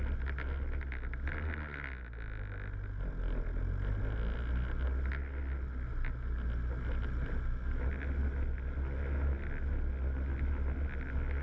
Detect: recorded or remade recorded